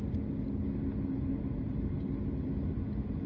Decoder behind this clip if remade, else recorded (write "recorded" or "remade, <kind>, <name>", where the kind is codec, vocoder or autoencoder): recorded